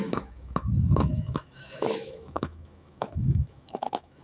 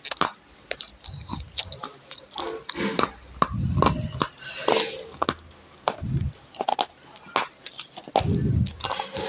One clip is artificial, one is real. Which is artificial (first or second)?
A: first